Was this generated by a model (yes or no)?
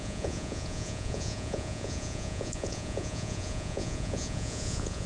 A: yes